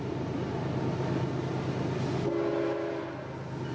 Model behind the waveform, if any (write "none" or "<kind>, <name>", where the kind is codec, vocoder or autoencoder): none